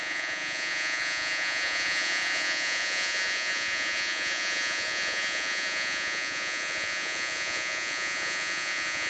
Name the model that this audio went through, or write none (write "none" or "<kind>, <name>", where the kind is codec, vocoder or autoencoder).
vocoder, Vocos